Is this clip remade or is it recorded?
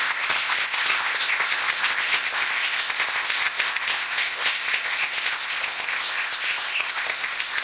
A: remade